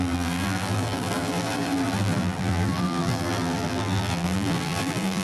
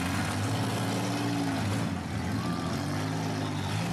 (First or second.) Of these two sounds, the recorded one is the second